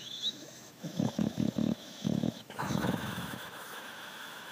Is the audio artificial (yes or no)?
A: yes